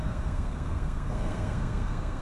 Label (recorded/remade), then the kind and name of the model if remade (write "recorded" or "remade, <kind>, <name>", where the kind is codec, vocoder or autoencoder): remade, codec, SNAC